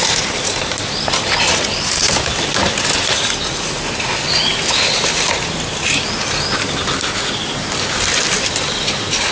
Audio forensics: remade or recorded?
recorded